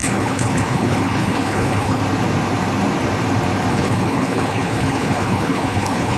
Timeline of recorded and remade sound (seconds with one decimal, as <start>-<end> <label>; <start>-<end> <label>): 0.0-2.0 remade; 2.0-3.7 recorded; 3.7-6.2 remade